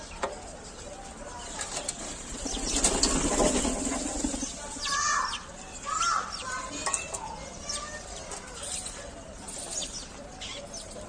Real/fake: real